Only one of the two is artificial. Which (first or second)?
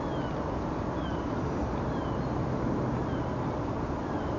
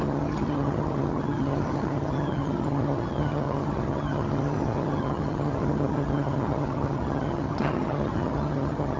second